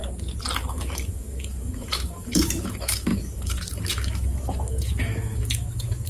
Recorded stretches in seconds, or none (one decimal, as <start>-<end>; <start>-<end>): 0.0-0.7